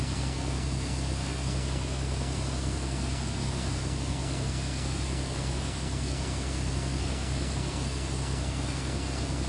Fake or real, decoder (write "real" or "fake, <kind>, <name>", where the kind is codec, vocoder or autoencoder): fake, codec, SNAC